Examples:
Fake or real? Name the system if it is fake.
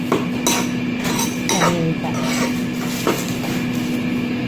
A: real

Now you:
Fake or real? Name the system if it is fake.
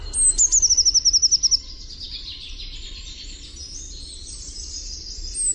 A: real